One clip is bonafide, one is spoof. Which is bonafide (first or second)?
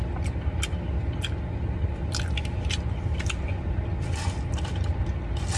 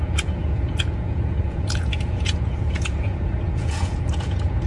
first